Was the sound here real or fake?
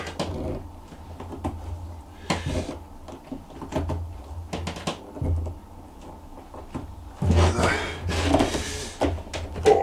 real